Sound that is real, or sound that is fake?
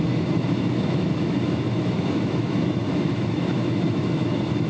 fake